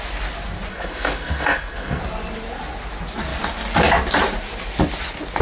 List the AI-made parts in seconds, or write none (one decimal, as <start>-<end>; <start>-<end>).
0.7-2.0